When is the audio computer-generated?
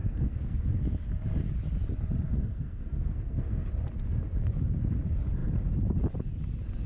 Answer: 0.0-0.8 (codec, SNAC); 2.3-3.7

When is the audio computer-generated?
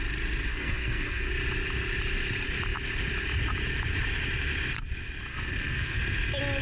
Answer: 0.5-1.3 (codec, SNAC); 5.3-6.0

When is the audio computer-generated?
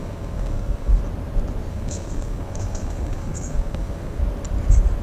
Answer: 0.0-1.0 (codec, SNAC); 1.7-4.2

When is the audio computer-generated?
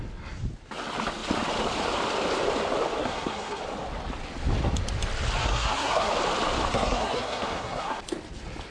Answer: 3.0-3.6 (codec, SNAC); 5.4-6.1; 6.7-8.0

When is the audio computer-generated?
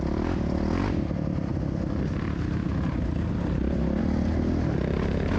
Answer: none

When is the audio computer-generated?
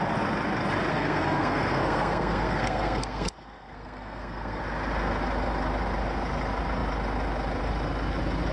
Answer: 0.9-4.6 (codec, SNAC)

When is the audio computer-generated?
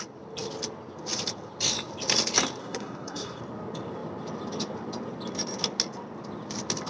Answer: 2.6-3.4 (codec, SNAC)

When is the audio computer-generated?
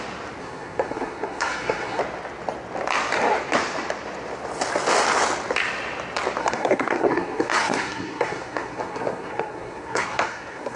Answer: 0.4-2.0 (codec, SNAC); 6.4-10.8